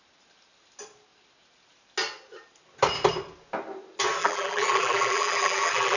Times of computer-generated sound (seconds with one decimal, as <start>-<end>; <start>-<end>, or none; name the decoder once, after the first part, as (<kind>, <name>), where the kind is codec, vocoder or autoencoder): 4.2-6.0 (vocoder, BigVGAN v2)